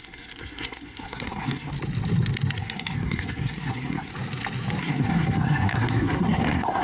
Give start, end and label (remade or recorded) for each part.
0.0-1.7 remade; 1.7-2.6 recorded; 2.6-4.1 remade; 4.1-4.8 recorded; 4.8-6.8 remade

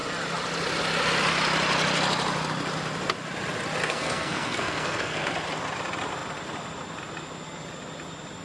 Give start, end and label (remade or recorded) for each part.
0.0-3.8 recorded; 3.8-5.3 remade; 5.3-8.4 recorded

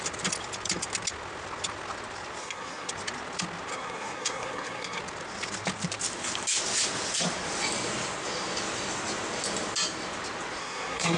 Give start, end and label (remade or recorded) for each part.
0.0-2.4 recorded; 2.4-2.9 remade; 2.9-3.7 recorded; 3.7-5.0 remade; 5.0-10.6 recorded; 10.6-11.2 remade

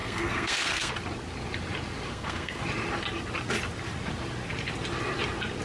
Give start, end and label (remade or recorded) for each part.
0.0-0.9 remade; 0.9-2.1 recorded; 2.1-2.6 remade; 2.6-5.6 recorded

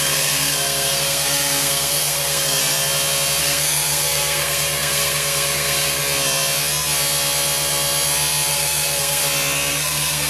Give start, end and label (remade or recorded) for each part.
0.0-2.6 remade; 2.6-3.4 recorded; 3.4-6.0 remade; 6.0-8.5 recorded; 8.5-9.2 remade; 9.2-9.7 recorded; 9.7-10.3 remade

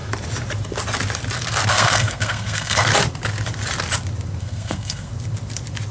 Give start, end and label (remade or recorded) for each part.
0.0-1.7 recorded; 1.7-2.9 remade; 2.9-4.4 recorded; 4.4-5.1 remade; 5.1-5.9 recorded

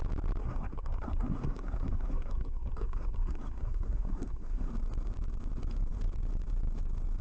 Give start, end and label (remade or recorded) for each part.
0.0-0.4 recorded; 0.4-4.7 remade; 4.7-7.2 recorded

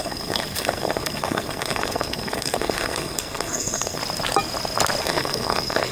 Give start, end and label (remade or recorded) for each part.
0.0-4.0 remade; 4.0-5.0 recorded; 5.0-5.9 remade